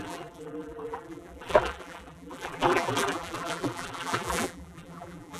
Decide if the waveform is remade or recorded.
remade